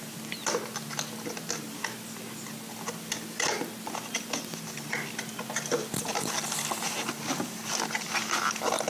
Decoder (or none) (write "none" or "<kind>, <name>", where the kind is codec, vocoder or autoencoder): none